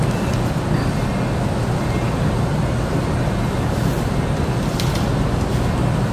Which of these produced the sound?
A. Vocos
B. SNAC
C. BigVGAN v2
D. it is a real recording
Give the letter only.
D